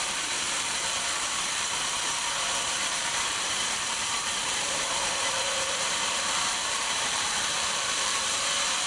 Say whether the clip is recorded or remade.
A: remade